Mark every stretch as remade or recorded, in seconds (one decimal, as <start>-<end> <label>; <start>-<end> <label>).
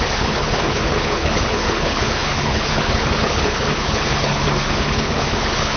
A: 0.0-5.8 remade